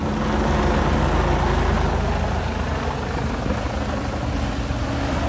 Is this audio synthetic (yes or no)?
no